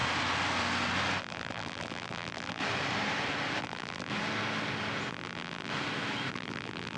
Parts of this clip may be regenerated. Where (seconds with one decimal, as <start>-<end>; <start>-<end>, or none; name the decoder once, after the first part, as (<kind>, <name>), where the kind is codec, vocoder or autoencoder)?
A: 1.2-2.6 (vocoder, BigVGAN v2); 3.6-4.1; 5.1-5.7; 6.3-7.0